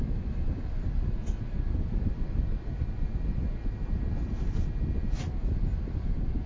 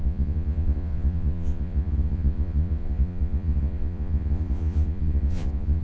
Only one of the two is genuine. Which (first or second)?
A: first